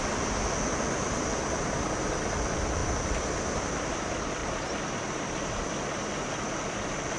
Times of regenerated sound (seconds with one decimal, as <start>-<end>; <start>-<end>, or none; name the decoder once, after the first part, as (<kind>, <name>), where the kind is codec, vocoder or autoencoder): 4.4-5.5 (vocoder, BigVGAN v2)